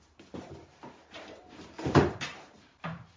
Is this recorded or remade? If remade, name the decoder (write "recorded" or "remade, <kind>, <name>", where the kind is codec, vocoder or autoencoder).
remade, vocoder, BigVGAN v2